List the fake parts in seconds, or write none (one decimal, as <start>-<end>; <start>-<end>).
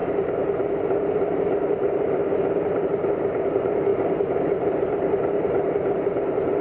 0.0-6.6